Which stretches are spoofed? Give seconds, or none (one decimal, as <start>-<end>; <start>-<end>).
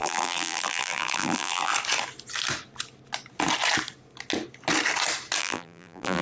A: 0.0-1.7; 5.4-6.2